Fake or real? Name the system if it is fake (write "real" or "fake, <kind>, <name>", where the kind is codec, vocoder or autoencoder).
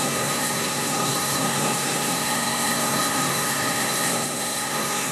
fake, codec, SNAC